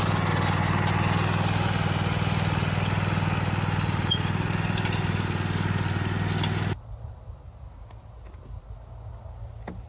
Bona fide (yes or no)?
yes